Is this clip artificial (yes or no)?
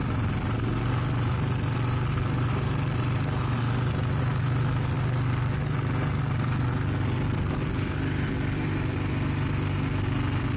no